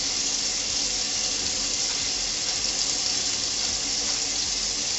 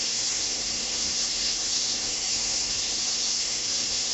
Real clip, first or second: first